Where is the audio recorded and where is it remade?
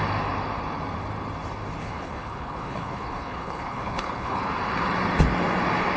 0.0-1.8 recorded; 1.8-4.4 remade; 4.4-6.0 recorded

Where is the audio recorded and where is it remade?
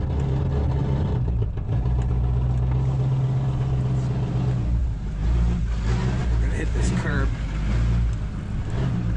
0.0-0.8 recorded; 0.8-2.1 remade; 2.1-4.8 recorded; 4.8-5.8 remade; 5.8-6.2 recorded; 6.2-7.3 remade; 7.3-9.2 recorded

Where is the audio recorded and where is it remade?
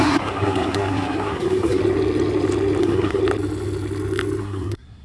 0.0-1.8 remade; 1.8-2.8 recorded; 2.8-3.2 remade; 3.2-4.4 recorded; 4.4-5.0 remade